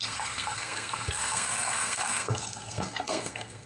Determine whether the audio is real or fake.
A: fake